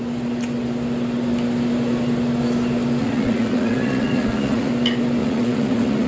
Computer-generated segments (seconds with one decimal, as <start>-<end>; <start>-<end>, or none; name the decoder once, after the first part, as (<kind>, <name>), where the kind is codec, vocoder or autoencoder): 3.0-4.7 (vocoder, Vocos); 5.2-6.1